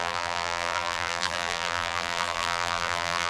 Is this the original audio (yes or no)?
no